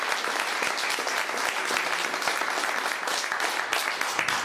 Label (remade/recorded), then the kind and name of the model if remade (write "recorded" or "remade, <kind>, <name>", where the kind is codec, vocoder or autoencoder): recorded